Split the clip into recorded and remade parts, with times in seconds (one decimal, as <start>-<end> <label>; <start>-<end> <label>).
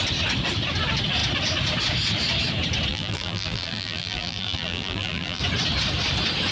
0.0-2.9 recorded; 2.9-5.4 remade; 5.4-6.5 recorded